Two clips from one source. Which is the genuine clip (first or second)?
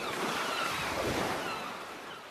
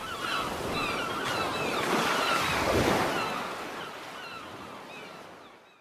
second